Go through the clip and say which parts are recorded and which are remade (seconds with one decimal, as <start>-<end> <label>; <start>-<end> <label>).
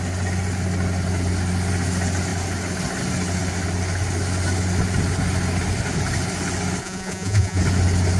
0.0-6.8 recorded; 6.8-7.6 remade; 7.6-8.2 recorded